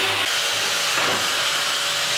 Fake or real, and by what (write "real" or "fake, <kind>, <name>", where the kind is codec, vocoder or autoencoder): real